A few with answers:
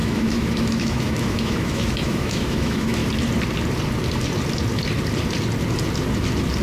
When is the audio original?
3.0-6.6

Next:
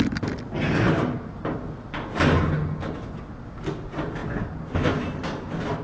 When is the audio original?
0.0-5.8

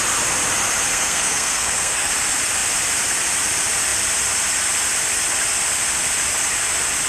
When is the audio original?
0.0-0.9; 2.1-7.1

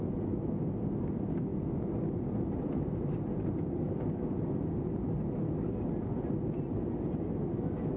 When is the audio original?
0.0-8.0

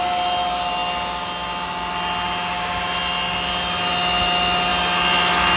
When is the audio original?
0.0-5.6

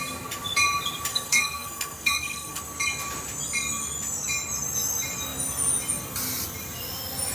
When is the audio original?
0.0-1.1; 2.6-7.3

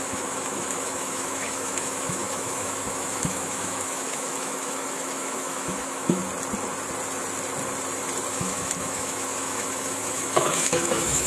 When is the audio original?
6.2-8.3

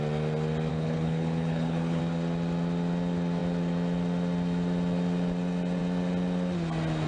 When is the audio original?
0.0-0.7; 2.0-7.1